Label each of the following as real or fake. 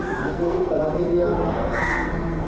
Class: fake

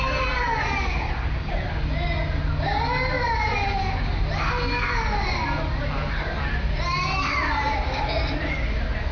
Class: real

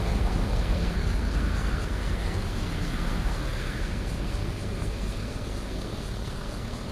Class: fake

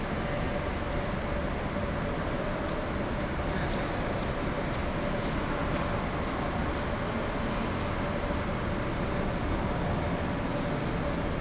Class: real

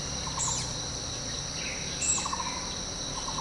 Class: real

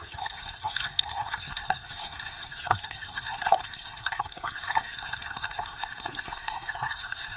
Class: fake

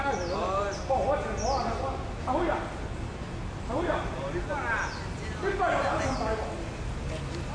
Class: real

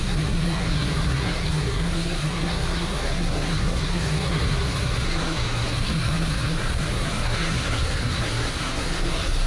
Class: fake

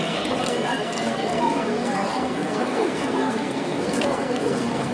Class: fake